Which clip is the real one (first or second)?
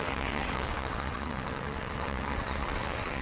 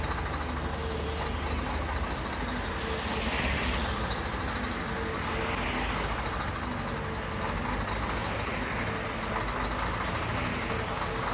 second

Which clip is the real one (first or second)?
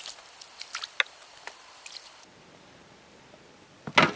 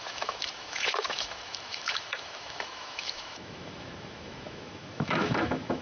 first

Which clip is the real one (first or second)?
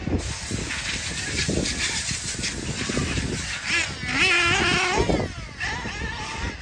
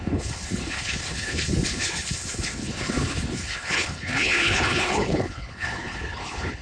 first